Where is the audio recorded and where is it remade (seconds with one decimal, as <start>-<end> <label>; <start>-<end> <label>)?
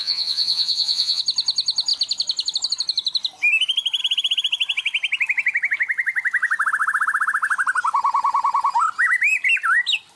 0.0-1.2 remade; 1.2-10.2 recorded